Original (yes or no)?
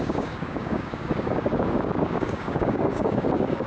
no